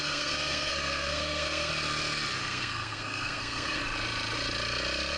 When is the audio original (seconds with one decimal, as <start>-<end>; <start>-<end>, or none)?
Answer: 1.7-2.4; 3.8-5.2